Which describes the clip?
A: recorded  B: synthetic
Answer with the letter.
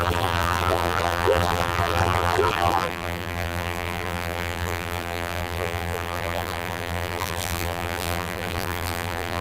B